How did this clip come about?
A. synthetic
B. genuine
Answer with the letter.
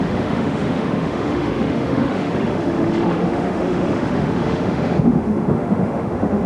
A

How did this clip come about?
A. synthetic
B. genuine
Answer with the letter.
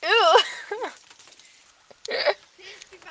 B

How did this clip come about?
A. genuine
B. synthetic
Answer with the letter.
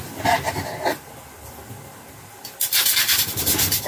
A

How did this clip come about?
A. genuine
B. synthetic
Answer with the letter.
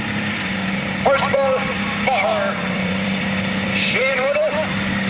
B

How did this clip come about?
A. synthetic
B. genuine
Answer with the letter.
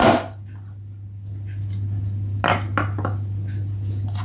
B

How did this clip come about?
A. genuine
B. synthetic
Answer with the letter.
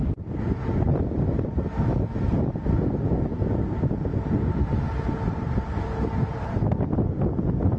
A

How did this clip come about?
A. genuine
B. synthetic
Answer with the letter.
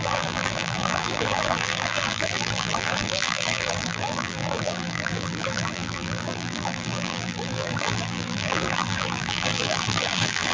B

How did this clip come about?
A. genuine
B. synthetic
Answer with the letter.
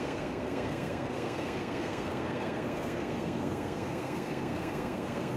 B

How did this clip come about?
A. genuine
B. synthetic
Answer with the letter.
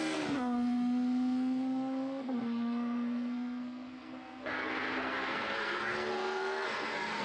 B